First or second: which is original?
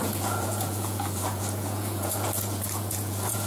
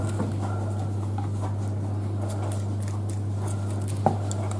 second